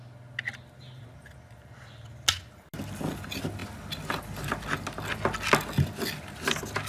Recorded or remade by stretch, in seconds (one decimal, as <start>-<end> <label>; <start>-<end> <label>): 0.0-6.9 recorded